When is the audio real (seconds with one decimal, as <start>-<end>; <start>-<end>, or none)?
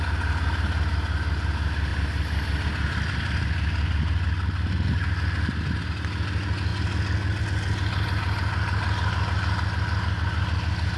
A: 0.0-11.0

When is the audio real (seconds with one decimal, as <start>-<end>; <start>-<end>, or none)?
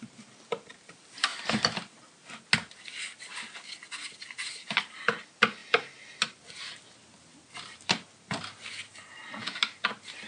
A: 0.0-10.3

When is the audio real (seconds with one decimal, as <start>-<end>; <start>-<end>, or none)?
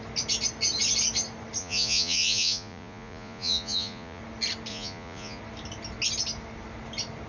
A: 0.0-1.6; 4.2-4.7; 5.4-7.3